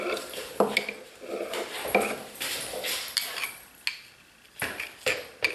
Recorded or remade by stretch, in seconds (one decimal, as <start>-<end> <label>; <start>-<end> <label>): 0.0-5.5 recorded